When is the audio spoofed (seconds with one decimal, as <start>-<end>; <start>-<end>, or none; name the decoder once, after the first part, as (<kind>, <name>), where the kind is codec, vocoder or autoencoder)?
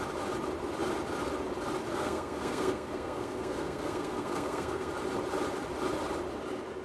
1.9-4.9 (codec, SNAC)